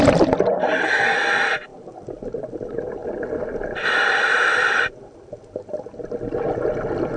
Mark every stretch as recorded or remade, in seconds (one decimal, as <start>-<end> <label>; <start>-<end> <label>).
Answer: 0.0-1.7 recorded; 1.7-2.4 remade; 2.4-3.0 recorded; 3.0-5.5 remade; 5.5-7.2 recorded